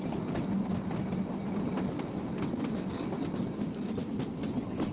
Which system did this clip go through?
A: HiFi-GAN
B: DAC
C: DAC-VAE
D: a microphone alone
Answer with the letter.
D